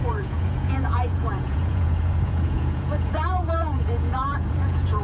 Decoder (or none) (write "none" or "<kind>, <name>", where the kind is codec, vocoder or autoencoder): vocoder, Vocos